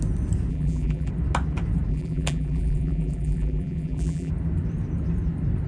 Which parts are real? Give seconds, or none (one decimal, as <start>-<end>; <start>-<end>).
0.0-0.5; 1.1-1.9; 4.3-5.7